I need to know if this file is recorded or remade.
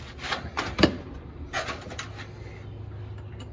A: recorded